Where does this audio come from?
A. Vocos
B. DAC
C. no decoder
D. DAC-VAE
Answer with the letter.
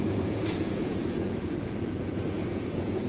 A